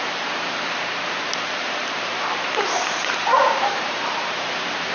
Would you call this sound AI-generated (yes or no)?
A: yes